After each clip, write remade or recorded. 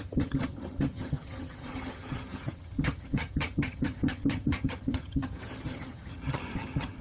remade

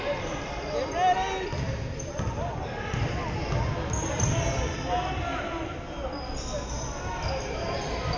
recorded